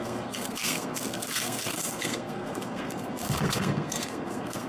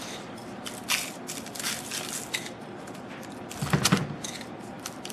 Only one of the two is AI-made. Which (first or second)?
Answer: first